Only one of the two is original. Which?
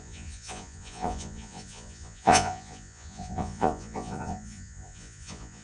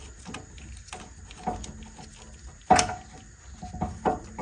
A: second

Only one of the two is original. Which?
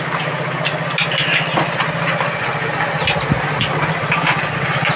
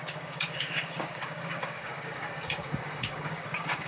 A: first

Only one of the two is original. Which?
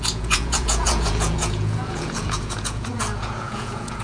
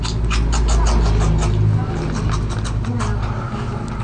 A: second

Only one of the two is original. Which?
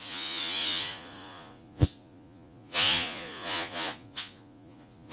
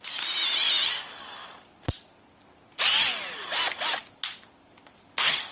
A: second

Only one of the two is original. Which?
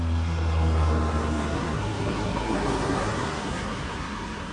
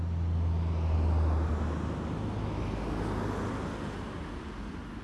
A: second